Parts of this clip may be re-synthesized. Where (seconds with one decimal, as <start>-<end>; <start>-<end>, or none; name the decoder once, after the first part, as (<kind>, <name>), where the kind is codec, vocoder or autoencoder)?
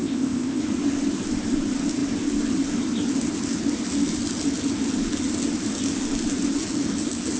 0.0-0.6 (codec, ZipCodec)